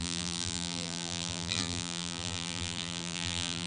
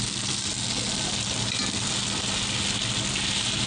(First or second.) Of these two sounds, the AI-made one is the first